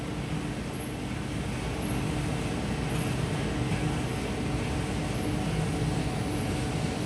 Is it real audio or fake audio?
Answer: real